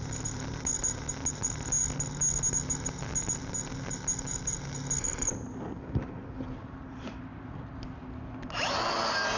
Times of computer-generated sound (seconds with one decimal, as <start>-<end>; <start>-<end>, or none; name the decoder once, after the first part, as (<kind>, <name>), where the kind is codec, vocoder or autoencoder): 6.6-7.1 (vocoder, BigVGAN v2)